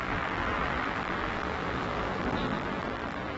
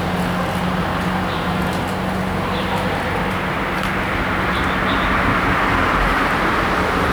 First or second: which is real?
second